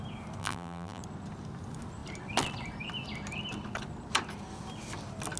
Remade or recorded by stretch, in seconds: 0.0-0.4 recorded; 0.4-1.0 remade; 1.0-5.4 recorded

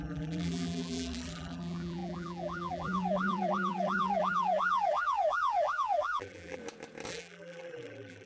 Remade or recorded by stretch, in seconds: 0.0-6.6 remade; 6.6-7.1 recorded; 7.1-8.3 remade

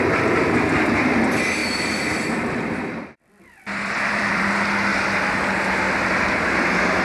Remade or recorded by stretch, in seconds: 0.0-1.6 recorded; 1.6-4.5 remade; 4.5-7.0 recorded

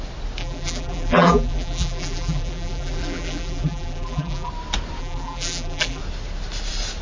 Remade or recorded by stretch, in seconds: 0.0-0.4 recorded; 0.4-4.5 remade; 4.5-5.0 recorded; 5.0-6.0 remade; 6.0-7.0 recorded

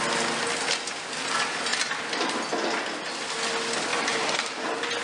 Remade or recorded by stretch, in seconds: 0.0-1.7 recorded; 1.7-2.3 remade; 2.3-3.9 recorded; 3.9-4.6 remade; 4.6-5.0 recorded